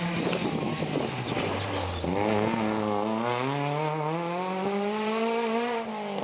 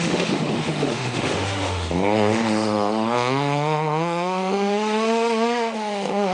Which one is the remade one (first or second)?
second